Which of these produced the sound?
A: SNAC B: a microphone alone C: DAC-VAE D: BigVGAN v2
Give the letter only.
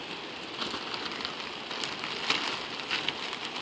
B